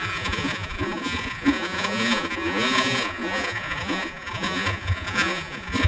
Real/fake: fake